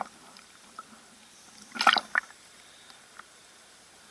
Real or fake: fake